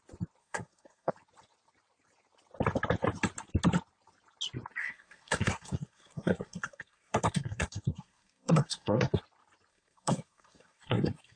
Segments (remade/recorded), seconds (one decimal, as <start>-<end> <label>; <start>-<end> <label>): 0.0-0.4 recorded; 0.4-1.1 remade; 1.1-4.8 recorded; 4.8-9.2 remade; 9.2-9.7 recorded; 9.7-11.4 remade